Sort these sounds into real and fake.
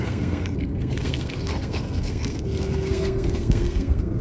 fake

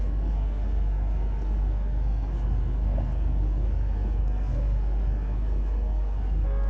fake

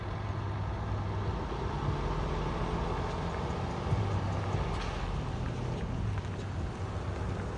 real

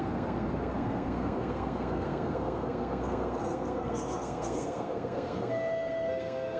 fake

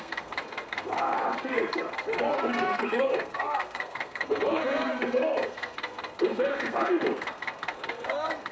fake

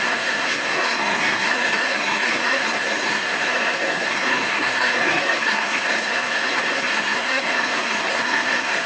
fake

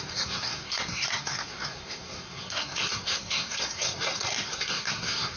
fake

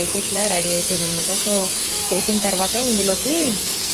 fake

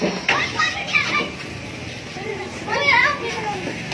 real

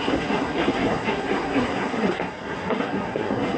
fake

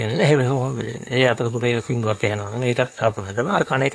fake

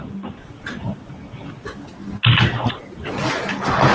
real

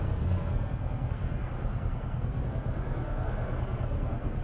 fake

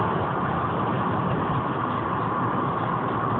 real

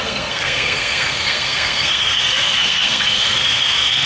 fake